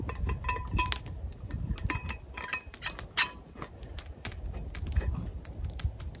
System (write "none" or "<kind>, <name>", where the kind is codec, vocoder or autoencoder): none